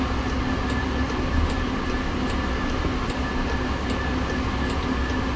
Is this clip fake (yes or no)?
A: no